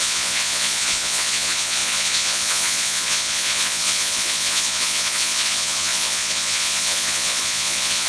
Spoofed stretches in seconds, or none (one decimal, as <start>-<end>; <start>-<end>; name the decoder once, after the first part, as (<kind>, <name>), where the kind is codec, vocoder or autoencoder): 0.0-8.1 (vocoder, Vocos)